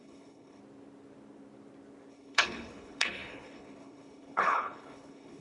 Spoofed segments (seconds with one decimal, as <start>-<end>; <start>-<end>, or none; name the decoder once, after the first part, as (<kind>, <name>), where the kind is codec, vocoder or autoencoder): 0.0-0.6 (codec, HILCodec); 2.1-5.4